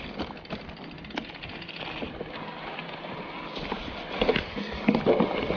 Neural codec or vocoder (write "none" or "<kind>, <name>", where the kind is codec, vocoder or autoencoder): none